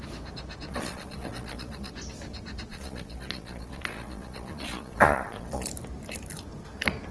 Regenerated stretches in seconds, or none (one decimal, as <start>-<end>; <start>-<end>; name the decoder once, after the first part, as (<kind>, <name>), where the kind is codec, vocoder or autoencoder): 0.7-1.9 (vocoder, Vocos); 2.7-5.7